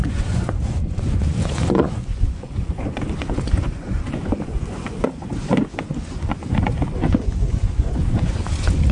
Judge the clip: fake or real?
fake